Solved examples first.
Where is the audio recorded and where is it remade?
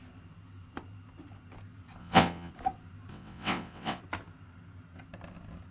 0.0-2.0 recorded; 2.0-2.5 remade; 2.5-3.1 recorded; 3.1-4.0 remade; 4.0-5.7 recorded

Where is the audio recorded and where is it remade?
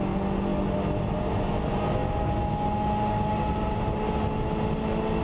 0.0-5.2 recorded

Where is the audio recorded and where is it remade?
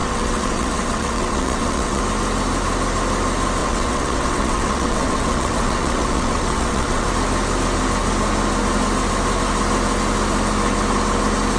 0.0-2.0 remade; 2.0-3.6 recorded; 3.6-7.1 remade; 7.1-11.6 recorded